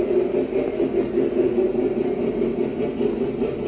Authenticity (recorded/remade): recorded